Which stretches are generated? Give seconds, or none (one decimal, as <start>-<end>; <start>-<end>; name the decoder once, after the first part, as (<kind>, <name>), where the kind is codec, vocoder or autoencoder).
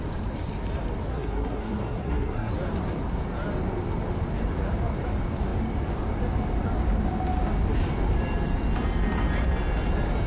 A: 1.1-2.5 (codec, SNAC)